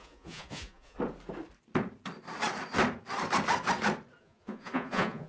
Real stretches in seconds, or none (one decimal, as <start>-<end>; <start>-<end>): 1.0-4.2